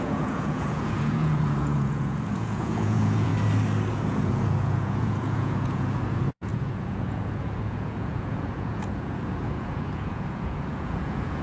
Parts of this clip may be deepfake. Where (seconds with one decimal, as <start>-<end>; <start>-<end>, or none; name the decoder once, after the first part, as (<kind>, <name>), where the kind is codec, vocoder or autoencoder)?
0.0-3.3 (vocoder, Vocos); 3.9-11.4